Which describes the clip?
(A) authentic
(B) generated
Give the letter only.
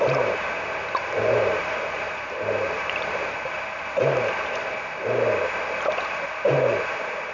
A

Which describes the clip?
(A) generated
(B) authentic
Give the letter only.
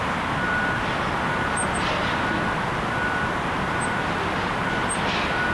B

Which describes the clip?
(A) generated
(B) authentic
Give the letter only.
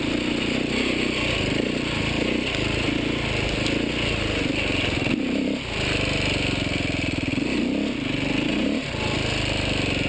B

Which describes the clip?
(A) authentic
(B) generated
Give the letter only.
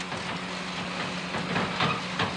A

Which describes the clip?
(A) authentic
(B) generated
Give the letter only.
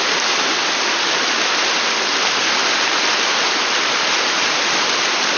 A